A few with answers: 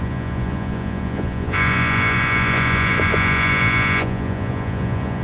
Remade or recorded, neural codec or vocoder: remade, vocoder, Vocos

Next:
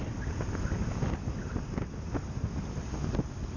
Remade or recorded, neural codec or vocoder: recorded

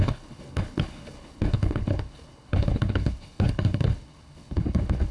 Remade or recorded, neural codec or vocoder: remade, codec, HILCodec